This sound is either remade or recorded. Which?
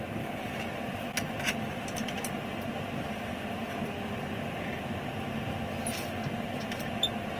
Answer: recorded